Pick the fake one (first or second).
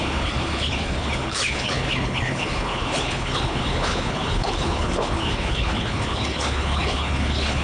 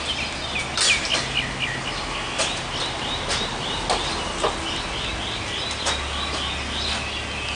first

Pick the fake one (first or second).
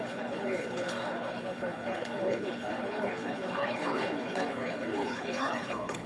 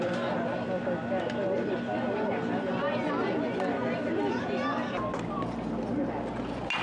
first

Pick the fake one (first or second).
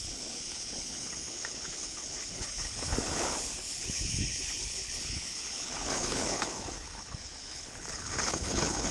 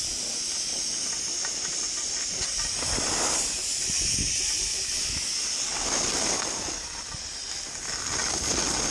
first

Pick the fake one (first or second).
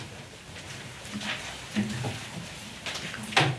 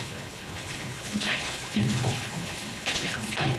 second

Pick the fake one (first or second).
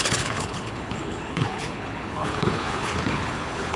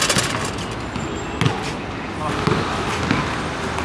first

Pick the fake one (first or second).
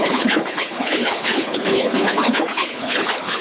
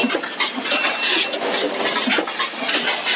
first